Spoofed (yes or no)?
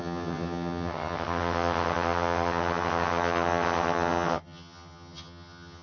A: yes